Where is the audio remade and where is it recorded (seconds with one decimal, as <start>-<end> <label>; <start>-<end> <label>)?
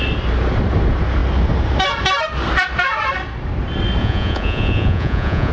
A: 0.0-4.0 recorded; 4.0-5.5 remade